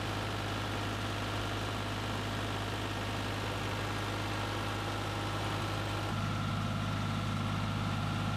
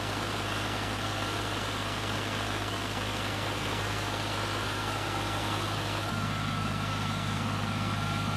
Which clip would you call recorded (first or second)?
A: first